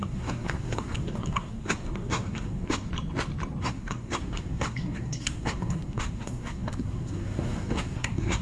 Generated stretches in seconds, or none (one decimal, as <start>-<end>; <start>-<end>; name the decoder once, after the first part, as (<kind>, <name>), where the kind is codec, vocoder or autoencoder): 0.0-2.9 (codec, SNAC); 3.6-8.4